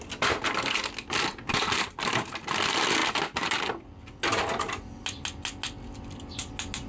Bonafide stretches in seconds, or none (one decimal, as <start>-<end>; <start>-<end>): 0.0-6.9